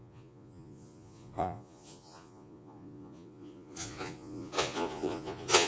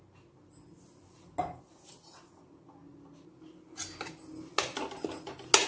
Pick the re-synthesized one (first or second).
first